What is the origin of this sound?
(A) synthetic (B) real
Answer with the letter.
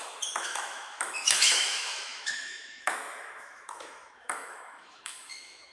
A